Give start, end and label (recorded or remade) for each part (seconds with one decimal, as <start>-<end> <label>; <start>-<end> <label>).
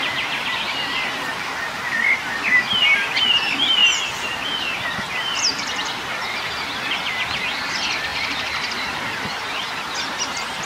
0.0-8.1 recorded; 8.1-8.7 remade; 8.7-10.7 recorded